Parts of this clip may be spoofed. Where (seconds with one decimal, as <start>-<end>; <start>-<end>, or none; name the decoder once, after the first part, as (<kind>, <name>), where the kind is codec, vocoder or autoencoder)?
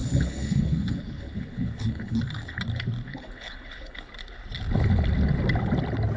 0.0-2.2 (codec, HILCodec); 3.0-4.1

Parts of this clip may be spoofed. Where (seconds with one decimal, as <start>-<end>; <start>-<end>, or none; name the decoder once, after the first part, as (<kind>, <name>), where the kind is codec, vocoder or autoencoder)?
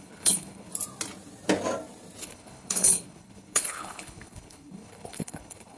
0.0-0.7 (codec, HILCodec); 2.2-5.8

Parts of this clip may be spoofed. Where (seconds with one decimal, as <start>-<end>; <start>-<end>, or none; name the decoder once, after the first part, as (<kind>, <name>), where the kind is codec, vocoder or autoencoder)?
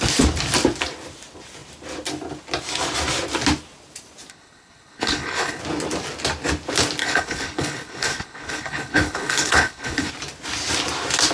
4.3-5.6 (codec, HILCodec); 7.0-10.1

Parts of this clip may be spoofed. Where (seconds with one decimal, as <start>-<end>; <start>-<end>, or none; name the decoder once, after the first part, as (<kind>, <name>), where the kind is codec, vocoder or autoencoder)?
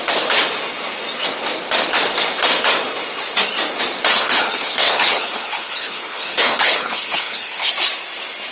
4.1-7.7 (codec, HILCodec)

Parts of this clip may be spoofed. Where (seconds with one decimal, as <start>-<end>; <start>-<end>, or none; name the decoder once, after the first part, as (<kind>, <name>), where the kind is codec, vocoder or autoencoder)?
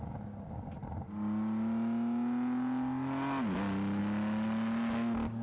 none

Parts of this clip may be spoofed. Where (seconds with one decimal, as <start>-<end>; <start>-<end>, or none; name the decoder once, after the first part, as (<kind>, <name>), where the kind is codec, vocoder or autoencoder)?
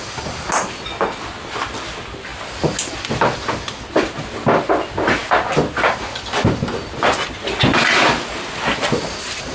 none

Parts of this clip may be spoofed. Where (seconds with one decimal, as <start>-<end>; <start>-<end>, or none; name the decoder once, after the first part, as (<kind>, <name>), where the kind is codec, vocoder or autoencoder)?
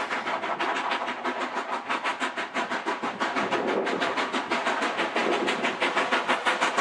none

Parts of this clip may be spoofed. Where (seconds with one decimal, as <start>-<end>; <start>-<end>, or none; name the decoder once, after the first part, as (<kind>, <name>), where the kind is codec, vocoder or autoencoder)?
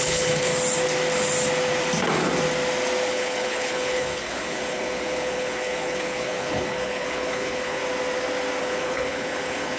0.0-0.5 (codec, HILCodec); 3.1-7.8; 8.6-9.8